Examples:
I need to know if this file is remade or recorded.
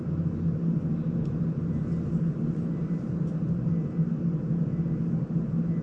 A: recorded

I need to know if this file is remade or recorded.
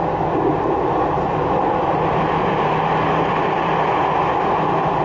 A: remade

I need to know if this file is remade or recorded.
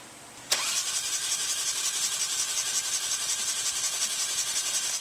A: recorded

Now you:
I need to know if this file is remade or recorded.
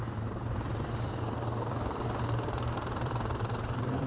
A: remade